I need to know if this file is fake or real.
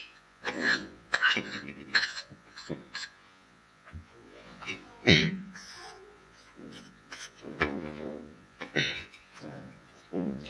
fake